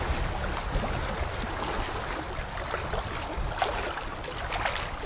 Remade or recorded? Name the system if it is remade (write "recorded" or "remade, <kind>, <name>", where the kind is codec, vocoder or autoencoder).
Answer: recorded